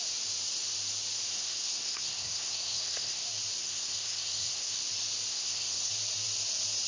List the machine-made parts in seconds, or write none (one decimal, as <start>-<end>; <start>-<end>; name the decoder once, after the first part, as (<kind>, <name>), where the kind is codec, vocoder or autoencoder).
1.3-3.2 (codec, SNAC); 3.6-4.8; 5.3-5.9